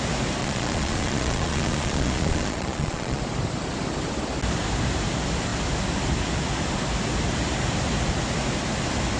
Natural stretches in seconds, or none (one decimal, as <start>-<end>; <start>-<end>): 0.0-0.4; 3.2-9.2